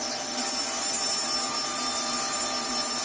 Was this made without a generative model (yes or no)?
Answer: yes